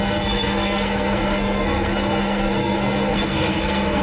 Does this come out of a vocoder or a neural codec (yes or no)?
yes